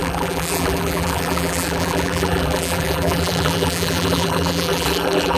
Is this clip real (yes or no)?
no